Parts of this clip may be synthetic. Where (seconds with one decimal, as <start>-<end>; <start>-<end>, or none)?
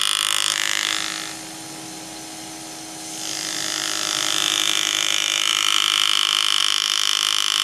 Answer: none